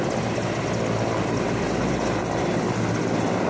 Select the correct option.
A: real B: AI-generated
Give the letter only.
A